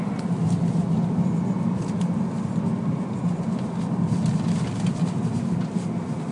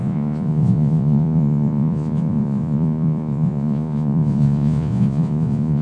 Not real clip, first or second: second